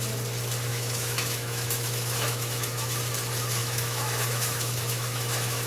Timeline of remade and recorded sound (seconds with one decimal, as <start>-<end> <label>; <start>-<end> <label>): 0.0-0.7 recorded; 0.7-3.0 remade; 3.0-3.6 recorded; 3.6-5.7 remade